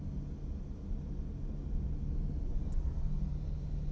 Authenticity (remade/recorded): recorded